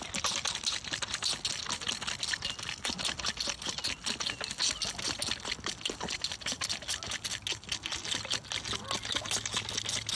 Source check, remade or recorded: recorded